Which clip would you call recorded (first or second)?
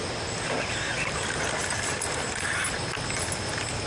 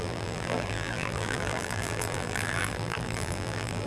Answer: first